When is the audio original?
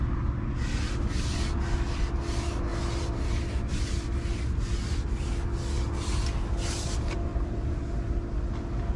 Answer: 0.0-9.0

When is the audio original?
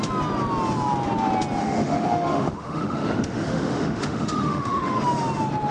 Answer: 0.0-1.6; 5.0-5.7